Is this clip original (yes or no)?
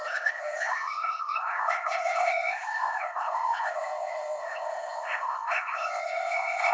no